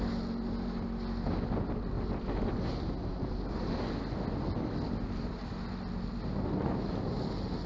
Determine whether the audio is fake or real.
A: real